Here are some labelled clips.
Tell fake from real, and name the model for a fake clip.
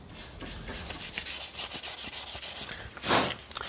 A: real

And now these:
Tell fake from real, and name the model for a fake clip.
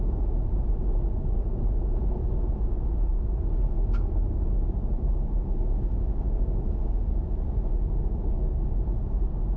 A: real